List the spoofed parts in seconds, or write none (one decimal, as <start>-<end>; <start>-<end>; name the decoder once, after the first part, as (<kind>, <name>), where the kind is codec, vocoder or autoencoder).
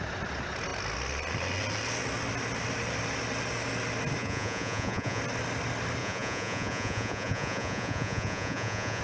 4.2-5.2 (vocoder, Vocos); 6.0-9.0